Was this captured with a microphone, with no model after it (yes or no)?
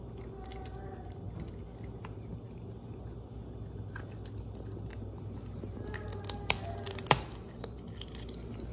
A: yes